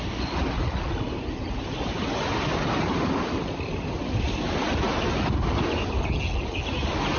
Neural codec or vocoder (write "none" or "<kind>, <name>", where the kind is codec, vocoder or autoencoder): none